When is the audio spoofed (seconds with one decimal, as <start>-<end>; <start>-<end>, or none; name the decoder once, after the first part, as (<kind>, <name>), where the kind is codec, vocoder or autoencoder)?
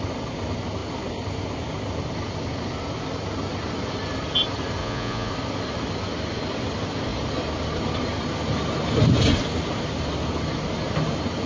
4.8-5.3 (vocoder, Vocos)